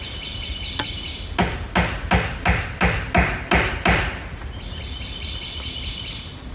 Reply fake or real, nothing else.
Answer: real